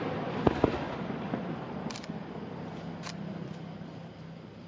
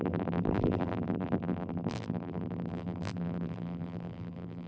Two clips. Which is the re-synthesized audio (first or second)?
second